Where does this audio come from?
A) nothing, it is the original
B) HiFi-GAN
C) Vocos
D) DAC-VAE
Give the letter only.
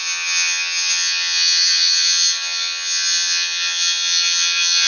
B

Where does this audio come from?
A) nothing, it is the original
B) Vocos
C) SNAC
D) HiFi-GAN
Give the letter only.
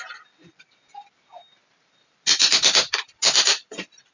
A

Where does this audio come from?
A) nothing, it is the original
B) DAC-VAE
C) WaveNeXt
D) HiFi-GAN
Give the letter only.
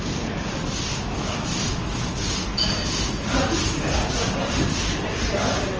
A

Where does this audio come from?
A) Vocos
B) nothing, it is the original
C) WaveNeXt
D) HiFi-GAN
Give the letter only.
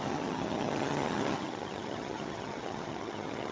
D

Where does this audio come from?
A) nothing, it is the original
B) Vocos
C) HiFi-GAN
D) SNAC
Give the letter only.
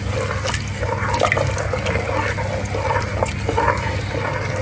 A